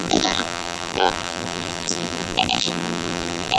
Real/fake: fake